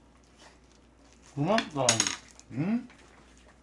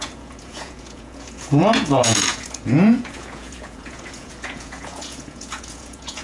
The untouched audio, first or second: first